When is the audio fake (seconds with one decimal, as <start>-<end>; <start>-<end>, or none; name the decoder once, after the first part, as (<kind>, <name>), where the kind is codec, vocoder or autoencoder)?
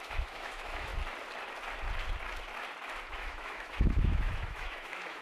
0.0-0.9 (autoencoder, DAC-VAE); 3.1-5.2